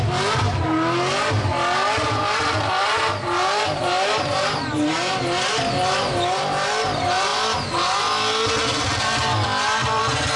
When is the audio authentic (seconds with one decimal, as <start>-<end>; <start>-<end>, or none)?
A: 0.0-10.4